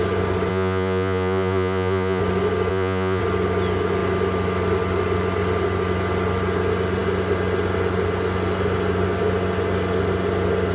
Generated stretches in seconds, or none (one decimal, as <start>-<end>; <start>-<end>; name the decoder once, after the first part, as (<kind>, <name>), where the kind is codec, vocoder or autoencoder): 0.5-2.2 (vocoder, Vocos); 2.7-3.2